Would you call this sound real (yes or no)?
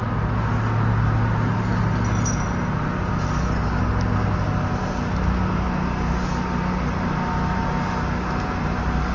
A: yes